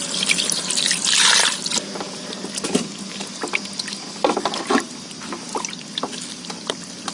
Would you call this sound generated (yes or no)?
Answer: no